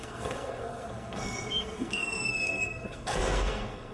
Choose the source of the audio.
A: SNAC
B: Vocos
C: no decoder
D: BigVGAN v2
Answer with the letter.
A